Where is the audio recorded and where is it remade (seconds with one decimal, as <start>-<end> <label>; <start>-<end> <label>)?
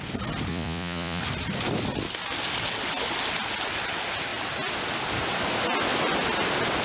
0.0-0.5 recorded; 0.5-1.2 remade; 1.2-6.8 recorded